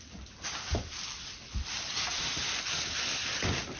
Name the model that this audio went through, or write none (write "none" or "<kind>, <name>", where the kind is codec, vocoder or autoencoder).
none